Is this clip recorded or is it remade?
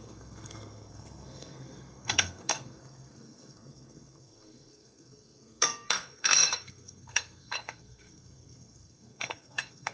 remade